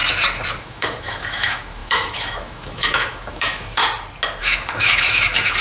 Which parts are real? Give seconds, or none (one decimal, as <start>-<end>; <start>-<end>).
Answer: 0.0-0.6; 3.8-4.4